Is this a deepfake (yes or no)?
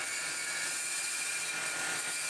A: no